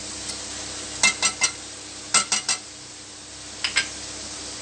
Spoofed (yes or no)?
no